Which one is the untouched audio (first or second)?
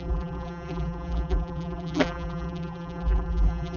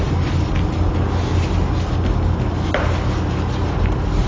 second